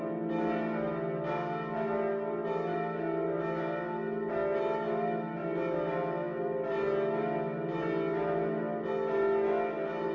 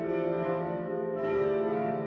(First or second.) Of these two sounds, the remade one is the second